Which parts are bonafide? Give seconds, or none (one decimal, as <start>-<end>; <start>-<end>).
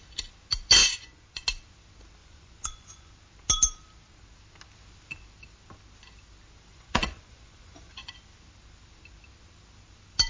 0.0-0.8; 1.4-2.2; 3.1-6.7; 8.1-10.3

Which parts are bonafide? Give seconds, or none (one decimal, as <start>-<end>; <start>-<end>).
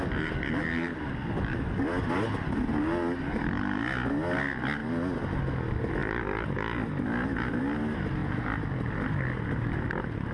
0.0-10.3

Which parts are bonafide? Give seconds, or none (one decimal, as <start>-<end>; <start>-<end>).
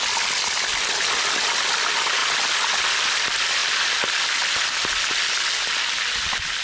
0.0-6.6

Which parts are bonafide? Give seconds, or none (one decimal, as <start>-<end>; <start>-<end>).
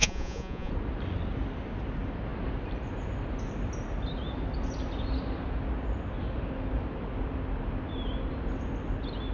0.7-9.3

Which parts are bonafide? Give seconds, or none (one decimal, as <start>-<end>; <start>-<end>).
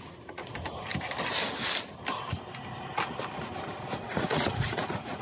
0.9-4.0